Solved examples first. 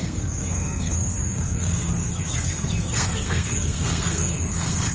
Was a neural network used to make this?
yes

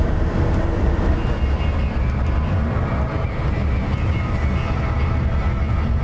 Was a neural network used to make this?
no